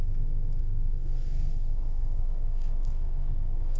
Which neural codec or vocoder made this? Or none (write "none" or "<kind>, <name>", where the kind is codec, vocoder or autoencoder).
codec, SNAC